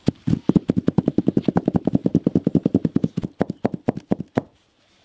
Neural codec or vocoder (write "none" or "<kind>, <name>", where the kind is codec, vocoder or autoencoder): none